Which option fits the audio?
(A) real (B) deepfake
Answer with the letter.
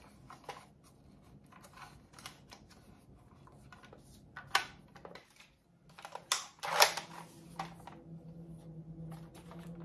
A